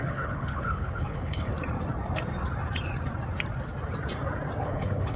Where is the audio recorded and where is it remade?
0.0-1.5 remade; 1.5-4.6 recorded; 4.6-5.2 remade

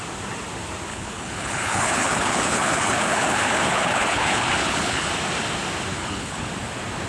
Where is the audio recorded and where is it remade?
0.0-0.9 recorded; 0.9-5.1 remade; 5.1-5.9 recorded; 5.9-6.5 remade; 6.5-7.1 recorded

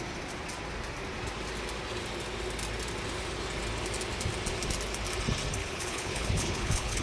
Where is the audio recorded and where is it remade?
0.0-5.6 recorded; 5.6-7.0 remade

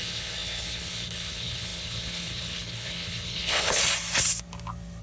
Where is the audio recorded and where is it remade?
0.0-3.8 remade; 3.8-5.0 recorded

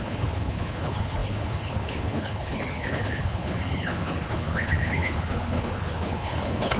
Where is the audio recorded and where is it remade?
0.0-6.8 remade

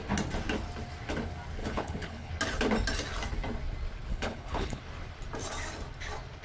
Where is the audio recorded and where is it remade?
0.0-1.6 recorded; 1.6-2.3 remade; 2.3-4.1 recorded; 4.1-4.8 remade; 4.8-6.4 recorded